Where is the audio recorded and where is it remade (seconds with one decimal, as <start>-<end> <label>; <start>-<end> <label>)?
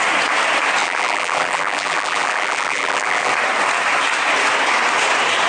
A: 0.0-0.8 recorded; 0.8-3.3 remade; 3.3-5.5 recorded